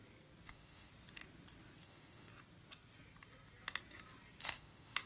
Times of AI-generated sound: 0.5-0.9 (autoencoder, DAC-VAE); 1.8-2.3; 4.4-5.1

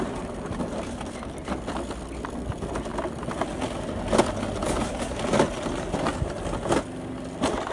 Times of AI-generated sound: none

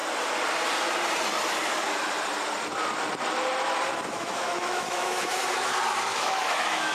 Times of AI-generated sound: 4.1-5.4 (autoencoder, DAC-VAE); 6.1-6.9

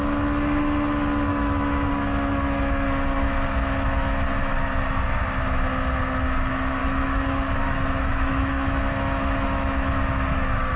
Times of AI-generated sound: 1.3-1.9 (autoencoder, DAC-VAE); 6.8-10.8